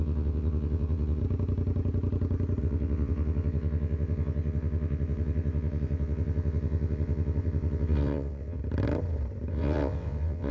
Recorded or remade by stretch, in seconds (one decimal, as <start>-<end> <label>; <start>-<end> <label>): 0.0-1.2 remade; 1.2-2.6 recorded; 2.6-8.6 remade; 8.6-9.5 recorded; 9.5-10.5 remade